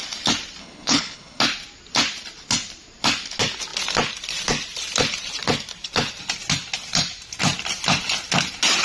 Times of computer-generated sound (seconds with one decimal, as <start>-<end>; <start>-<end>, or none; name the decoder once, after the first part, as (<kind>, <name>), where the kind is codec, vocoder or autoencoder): 0.6-1.4 (codec, HILCodec)